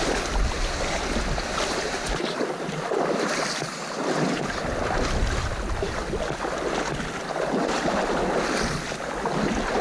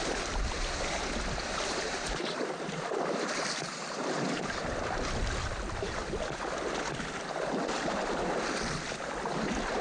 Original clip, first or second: first